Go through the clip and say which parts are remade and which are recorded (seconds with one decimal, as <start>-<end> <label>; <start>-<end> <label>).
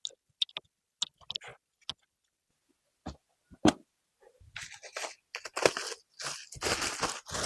0.0-7.5 recorded